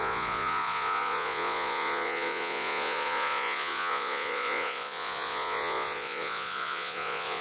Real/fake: fake